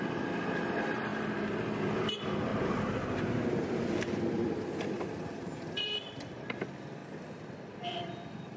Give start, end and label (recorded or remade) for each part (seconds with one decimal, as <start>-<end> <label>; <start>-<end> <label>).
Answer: 0.0-1.1 remade; 1.1-2.1 recorded; 2.1-7.0 remade; 7.0-7.7 recorded; 7.7-8.6 remade